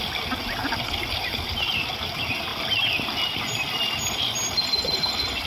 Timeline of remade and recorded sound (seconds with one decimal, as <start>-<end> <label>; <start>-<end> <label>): 0.0-5.5 recorded